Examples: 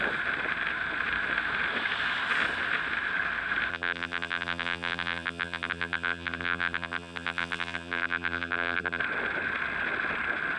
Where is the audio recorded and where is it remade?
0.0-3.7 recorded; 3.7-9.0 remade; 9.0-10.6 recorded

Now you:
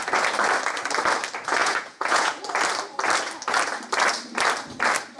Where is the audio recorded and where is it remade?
0.0-1.6 recorded; 1.6-2.4 remade; 2.4-5.2 recorded

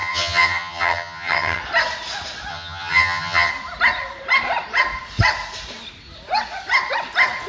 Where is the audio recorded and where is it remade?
0.0-1.6 remade; 1.6-2.5 recorded; 2.5-3.5 remade; 3.5-7.5 recorded

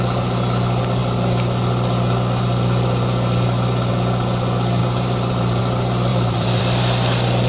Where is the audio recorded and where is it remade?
0.0-4.8 recorded; 4.8-5.6 remade; 5.6-6.1 recorded; 6.1-6.6 remade; 6.6-7.5 recorded

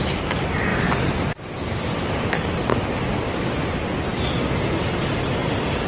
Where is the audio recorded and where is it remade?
0.0-5.9 recorded

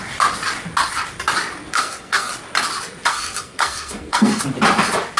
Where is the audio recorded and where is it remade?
0.0-1.7 recorded; 1.7-2.3 remade; 2.3-3.1 recorded; 3.1-4.4 remade; 4.4-5.2 recorded

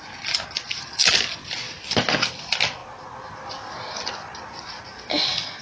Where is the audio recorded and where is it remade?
0.0-5.6 recorded